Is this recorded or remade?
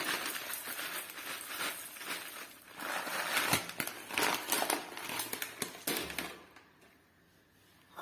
recorded